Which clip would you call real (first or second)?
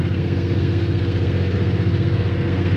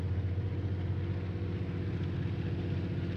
second